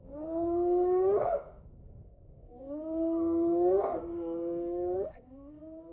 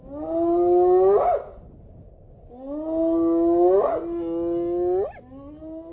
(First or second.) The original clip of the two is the second